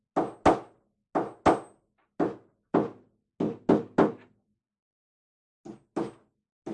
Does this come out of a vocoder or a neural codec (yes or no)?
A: no